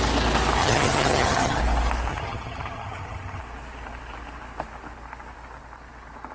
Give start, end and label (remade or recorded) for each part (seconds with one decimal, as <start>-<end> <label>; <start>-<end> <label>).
0.0-0.6 recorded; 0.6-1.6 remade; 1.6-2.1 recorded; 2.1-3.4 remade; 3.4-6.3 recorded